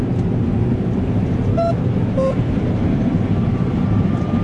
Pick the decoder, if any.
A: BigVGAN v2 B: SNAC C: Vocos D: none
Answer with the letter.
A